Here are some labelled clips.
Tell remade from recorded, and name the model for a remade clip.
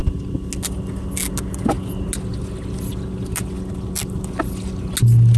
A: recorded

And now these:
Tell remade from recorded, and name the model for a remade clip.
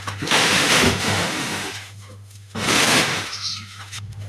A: remade, autoencoder, DAC-VAE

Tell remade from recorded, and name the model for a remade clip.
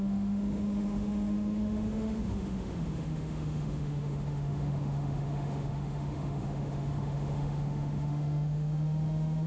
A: remade, autoencoder, DAC-VAE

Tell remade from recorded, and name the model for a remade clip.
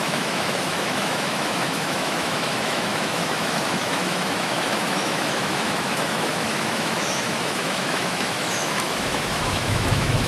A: remade, autoencoder, DAC-VAE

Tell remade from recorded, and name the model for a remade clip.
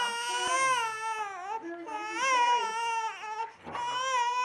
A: recorded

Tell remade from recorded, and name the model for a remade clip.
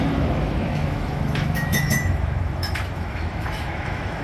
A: remade, autoencoder, DAC-VAE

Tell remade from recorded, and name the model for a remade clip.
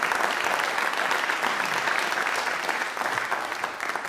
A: recorded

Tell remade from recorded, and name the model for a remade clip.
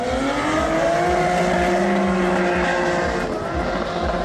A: recorded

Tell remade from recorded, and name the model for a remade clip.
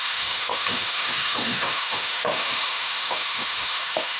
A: remade, autoencoder, DAC-VAE